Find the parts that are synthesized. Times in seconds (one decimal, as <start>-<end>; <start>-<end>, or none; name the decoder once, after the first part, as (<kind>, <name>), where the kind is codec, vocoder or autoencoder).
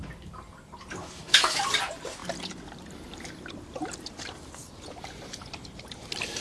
1.0-1.6 (autoencoder, DAC-VAE)